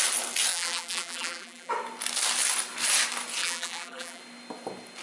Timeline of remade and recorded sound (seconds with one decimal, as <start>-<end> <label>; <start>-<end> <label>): 0.0-0.5 recorded; 0.5-1.7 remade; 1.7-3.4 recorded; 3.4-4.2 remade; 4.2-5.0 recorded